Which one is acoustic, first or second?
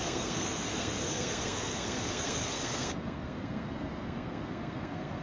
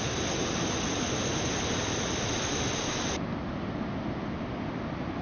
second